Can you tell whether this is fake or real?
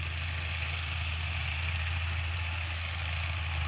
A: real